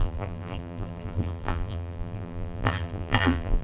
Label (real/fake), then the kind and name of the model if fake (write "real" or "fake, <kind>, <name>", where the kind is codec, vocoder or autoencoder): fake, vocoder, BigVGAN v2